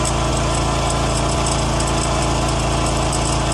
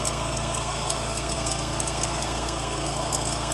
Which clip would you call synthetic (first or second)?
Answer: second